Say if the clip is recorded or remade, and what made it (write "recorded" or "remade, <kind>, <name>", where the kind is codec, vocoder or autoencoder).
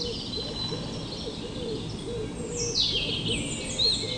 recorded